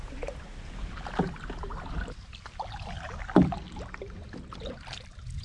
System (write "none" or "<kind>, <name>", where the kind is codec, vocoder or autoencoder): none